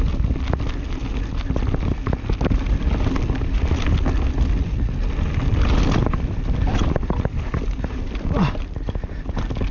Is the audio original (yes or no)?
yes